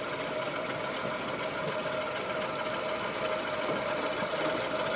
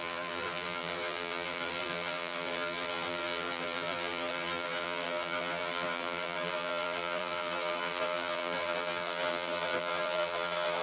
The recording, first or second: first